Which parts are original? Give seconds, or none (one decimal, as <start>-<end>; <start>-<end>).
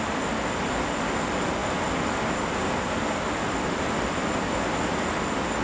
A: 0.0-5.6